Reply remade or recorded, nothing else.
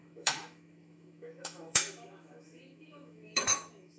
remade